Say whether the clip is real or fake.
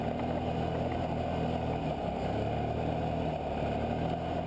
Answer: real